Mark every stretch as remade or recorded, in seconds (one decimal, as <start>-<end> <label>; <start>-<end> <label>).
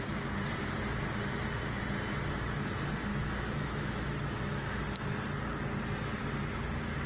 0.0-3.1 recorded; 3.1-4.7 remade; 4.7-7.1 recorded